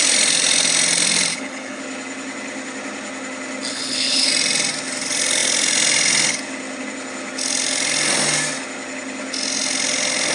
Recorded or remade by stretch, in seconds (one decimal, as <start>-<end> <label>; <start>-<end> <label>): 0.0-1.3 recorded; 1.3-1.8 remade; 1.8-3.7 recorded; 3.7-4.3 remade; 4.3-10.3 recorded